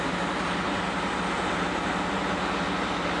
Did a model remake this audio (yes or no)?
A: no